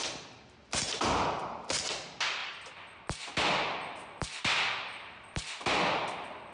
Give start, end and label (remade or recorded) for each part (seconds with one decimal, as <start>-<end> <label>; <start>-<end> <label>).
0.0-6.5 recorded